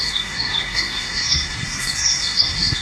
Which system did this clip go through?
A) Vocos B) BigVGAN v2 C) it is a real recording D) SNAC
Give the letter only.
D